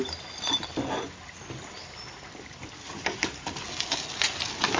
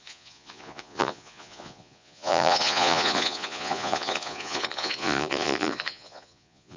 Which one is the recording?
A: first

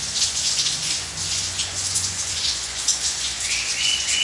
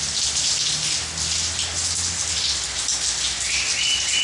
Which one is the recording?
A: second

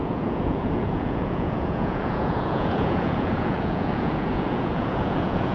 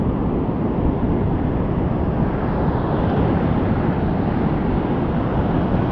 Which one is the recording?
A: second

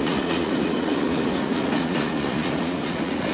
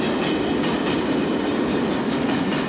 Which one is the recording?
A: second